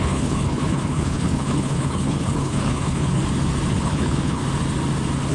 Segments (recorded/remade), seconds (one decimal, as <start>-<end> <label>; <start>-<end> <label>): 0.0-3.2 remade; 3.2-3.7 recorded; 3.7-4.4 remade; 4.4-5.3 recorded